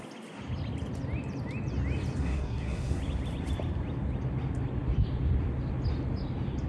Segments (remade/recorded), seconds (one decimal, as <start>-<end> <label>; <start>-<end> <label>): 0.0-2.2 recorded; 2.2-3.0 remade; 3.0-6.7 recorded